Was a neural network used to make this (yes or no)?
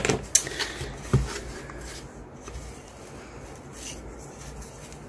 no